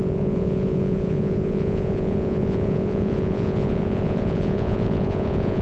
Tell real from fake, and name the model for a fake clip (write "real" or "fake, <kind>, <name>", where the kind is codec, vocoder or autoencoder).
fake, vocoder, Vocos